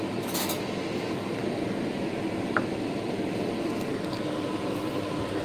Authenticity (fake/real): real